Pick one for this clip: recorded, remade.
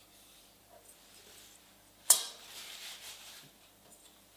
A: remade